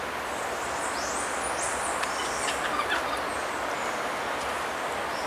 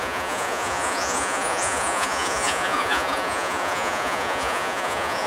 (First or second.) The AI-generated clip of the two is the second